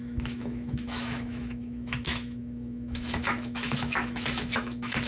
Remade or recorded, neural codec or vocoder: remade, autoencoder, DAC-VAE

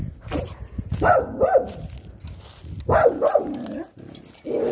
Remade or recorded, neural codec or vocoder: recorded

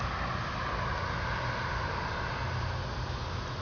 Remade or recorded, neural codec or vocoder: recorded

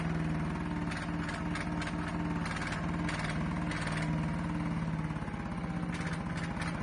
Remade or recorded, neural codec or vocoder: recorded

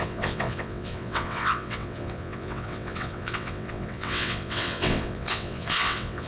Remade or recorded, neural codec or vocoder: remade, vocoder, WaveNeXt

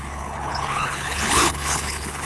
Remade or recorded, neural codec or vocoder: remade, codec, HILCodec